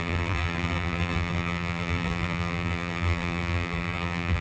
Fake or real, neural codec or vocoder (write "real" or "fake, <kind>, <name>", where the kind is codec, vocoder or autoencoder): fake, vocoder, BigVGAN v2